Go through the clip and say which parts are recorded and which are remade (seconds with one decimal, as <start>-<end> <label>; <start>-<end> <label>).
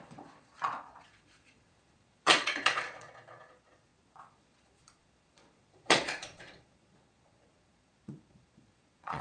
0.0-9.2 remade